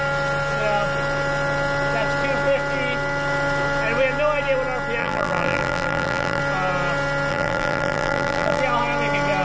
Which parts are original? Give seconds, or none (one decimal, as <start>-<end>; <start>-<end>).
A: 0.0-5.0; 6.4-7.3; 8.6-9.4